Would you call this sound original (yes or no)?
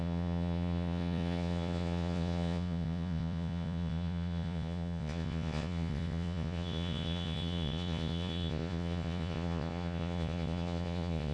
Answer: no